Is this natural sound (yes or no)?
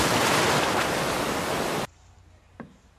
yes